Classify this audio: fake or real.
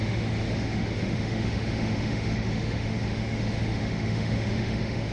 fake